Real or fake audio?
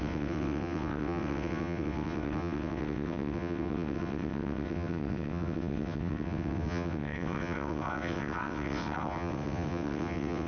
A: fake